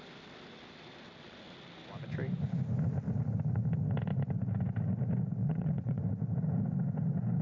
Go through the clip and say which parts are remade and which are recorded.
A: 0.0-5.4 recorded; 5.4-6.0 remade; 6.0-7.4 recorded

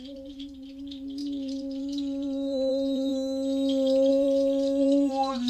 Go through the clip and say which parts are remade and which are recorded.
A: 0.0-3.1 remade; 3.1-4.1 recorded; 4.1-5.5 remade